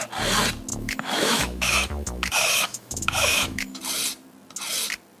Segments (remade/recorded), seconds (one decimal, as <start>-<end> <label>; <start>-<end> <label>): 0.0-0.7 recorded; 0.7-3.8 remade; 3.8-5.2 recorded